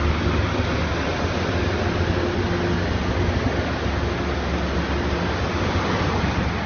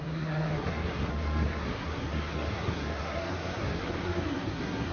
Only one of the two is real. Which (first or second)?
first